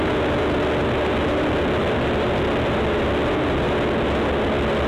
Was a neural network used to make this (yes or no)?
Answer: no